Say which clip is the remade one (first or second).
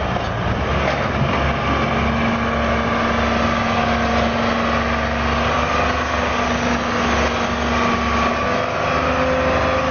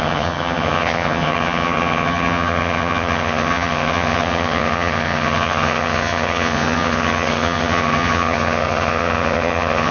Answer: second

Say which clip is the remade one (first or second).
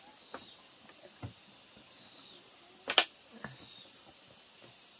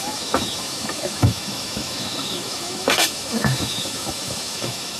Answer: second